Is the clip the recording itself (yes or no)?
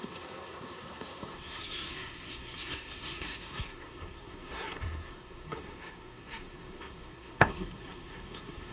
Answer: no